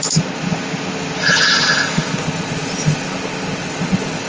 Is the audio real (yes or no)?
yes